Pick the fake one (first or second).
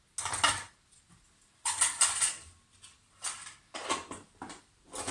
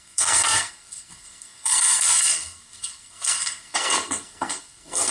second